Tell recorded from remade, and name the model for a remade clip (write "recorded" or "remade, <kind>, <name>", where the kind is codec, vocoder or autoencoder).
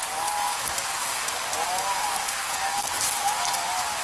remade, codec, DAC